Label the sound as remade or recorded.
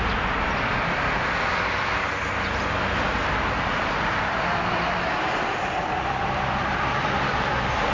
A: recorded